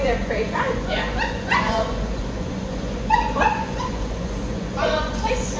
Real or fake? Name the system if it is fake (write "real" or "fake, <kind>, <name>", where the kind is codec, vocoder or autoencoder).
fake, vocoder, Vocos